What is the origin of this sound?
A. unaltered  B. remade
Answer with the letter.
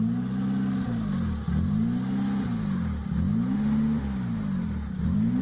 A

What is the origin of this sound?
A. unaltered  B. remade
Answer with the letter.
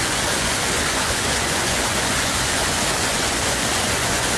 B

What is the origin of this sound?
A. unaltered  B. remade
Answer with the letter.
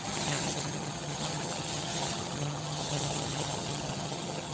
B